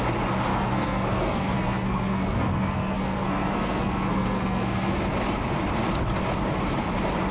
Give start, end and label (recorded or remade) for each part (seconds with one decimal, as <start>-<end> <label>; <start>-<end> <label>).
0.0-0.5 recorded; 0.5-4.9 remade; 4.9-7.3 recorded